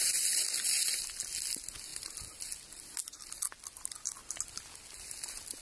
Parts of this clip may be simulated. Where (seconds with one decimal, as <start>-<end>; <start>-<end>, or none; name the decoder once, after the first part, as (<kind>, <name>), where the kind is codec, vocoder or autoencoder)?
none